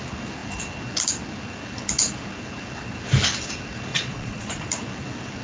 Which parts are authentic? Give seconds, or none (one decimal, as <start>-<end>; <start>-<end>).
0.0-3.9; 4.7-5.4